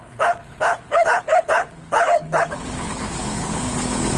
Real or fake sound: fake